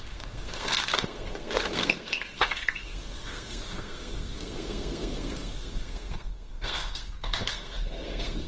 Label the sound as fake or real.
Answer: fake